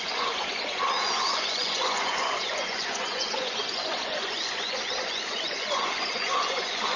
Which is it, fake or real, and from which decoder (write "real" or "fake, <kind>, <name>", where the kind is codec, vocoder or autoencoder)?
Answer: fake, vocoder, Vocos